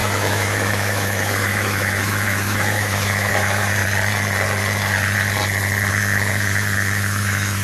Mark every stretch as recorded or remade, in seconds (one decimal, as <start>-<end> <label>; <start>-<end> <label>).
0.0-3.8 remade; 3.8-5.9 recorded; 5.9-7.6 remade

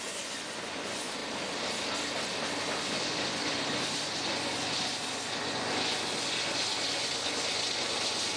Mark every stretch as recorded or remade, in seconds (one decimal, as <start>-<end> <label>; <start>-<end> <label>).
0.0-1.2 remade; 1.2-2.8 recorded; 2.8-8.4 remade

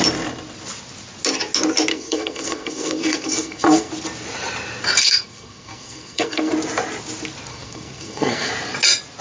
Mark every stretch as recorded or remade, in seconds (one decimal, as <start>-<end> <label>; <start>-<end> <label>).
0.0-1.9 recorded; 1.9-3.9 remade; 3.9-5.0 recorded; 5.0-6.5 remade; 6.5-7.5 recorded; 7.5-8.5 remade; 8.5-9.2 recorded

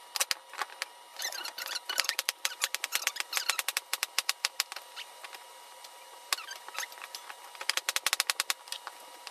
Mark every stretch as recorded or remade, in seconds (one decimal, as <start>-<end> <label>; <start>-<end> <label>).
0.0-1.1 recorded; 1.1-2.5 remade; 2.5-9.3 recorded